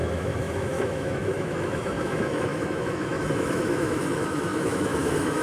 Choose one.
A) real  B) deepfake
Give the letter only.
B